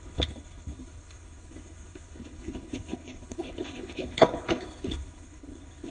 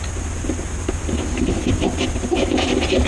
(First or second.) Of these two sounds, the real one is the second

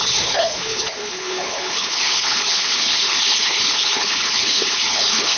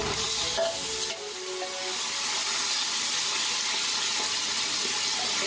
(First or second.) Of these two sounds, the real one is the second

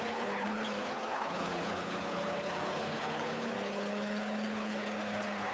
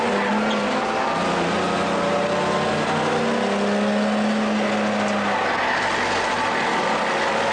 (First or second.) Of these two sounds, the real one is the second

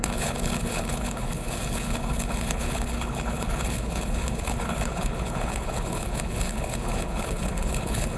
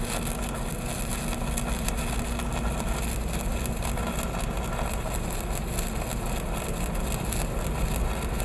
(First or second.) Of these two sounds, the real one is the second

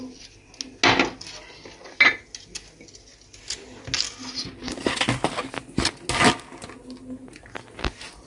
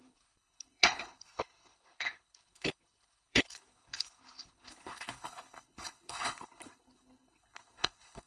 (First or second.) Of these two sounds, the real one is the first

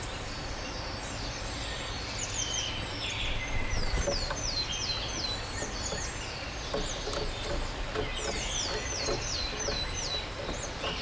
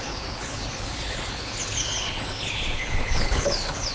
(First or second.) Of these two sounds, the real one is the first